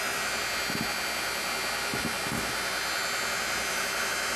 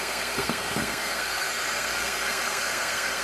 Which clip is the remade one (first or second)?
second